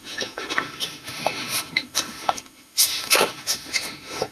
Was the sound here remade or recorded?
remade